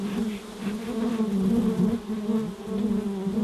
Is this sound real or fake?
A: real